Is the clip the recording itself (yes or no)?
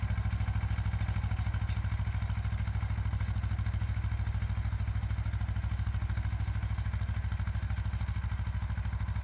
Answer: yes